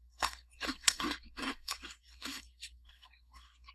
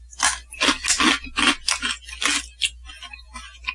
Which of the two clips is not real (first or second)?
first